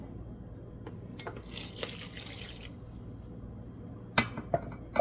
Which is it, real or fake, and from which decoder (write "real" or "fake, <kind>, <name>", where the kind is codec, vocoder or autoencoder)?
real